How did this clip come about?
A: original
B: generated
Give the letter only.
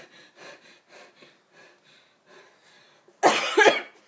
A